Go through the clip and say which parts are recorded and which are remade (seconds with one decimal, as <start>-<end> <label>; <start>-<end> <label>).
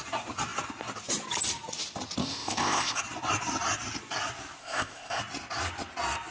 0.0-2.2 recorded; 2.2-3.0 remade; 3.0-4.6 recorded; 4.6-5.2 remade; 5.2-6.3 recorded